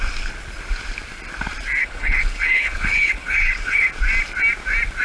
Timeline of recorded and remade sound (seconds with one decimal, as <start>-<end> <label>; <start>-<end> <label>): 0.0-1.8 recorded; 1.8-3.9 remade; 3.9-5.0 recorded

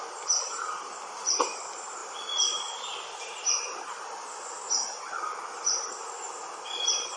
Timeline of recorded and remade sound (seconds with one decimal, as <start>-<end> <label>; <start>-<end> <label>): 0.0-7.2 recorded

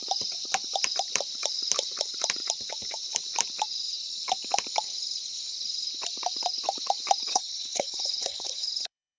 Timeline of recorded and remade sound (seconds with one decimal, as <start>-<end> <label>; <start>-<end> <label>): 0.0-7.3 recorded; 7.3-9.2 remade